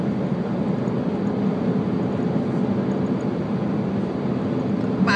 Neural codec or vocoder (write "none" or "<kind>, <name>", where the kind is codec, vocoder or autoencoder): none